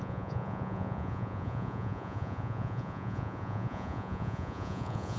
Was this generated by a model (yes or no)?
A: yes